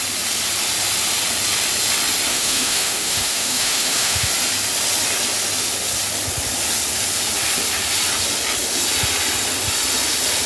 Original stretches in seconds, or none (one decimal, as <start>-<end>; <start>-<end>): 0.0-2.3; 4.3-10.5